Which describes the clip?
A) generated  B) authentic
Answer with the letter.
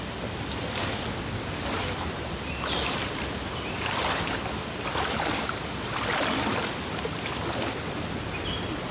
B